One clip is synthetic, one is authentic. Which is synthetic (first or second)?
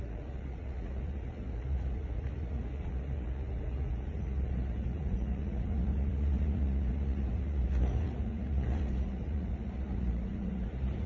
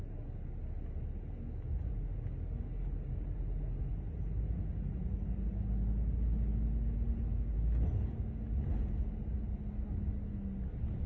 first